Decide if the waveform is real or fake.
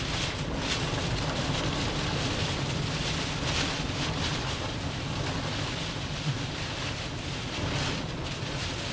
real